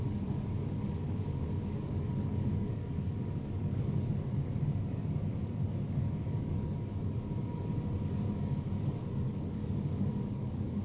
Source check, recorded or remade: remade